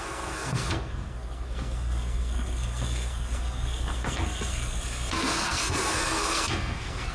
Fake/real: fake